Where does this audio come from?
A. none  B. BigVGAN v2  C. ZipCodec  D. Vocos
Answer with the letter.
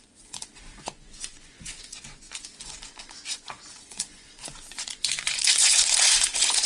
D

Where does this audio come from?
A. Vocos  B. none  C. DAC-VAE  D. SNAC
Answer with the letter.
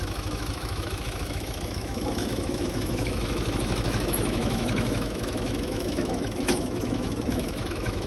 C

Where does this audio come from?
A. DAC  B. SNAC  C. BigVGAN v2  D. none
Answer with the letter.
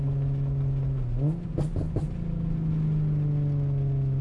D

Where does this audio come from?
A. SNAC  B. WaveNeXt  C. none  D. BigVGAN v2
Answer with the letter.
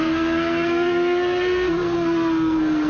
A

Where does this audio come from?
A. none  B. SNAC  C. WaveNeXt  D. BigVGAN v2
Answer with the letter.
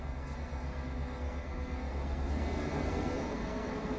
B